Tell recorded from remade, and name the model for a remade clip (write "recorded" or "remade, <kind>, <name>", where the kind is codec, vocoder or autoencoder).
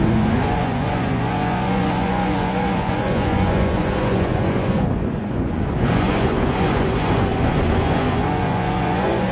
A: remade, vocoder, Vocos